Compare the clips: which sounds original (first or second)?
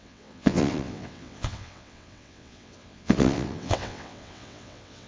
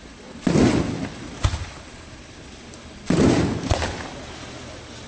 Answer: second